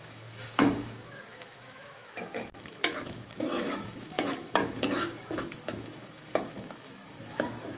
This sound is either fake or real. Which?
fake